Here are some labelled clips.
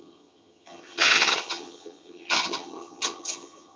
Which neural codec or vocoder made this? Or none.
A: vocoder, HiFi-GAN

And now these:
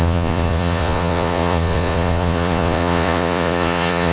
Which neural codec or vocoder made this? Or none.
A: vocoder, Vocos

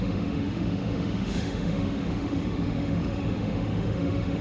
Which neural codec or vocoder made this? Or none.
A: autoencoder, DAC-VAE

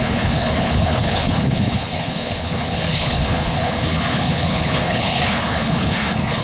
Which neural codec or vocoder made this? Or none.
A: codec, HILCodec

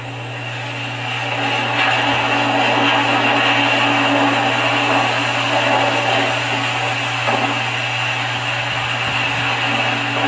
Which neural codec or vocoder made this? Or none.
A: none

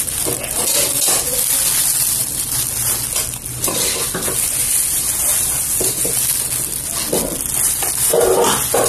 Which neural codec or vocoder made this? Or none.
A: none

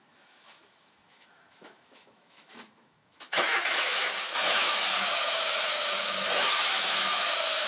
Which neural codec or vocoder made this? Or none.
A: autoencoder, DAC-VAE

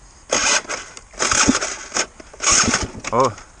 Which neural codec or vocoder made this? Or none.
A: none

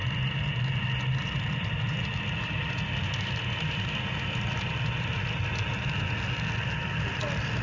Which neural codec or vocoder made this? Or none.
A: none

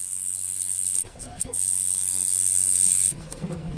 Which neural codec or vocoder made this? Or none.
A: codec, SNAC